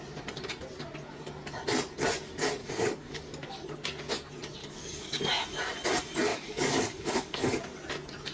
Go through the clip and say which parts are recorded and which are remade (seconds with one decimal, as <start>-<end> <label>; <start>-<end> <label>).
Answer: 0.0-2.6 recorded; 2.6-3.2 remade; 3.2-4.6 recorded; 4.6-5.2 remade; 5.2-6.3 recorded; 6.3-7.6 remade; 7.6-8.3 recorded